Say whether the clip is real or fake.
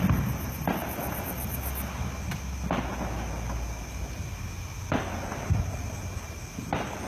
real